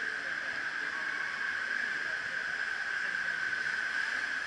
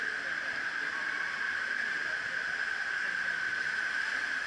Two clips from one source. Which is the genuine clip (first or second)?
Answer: first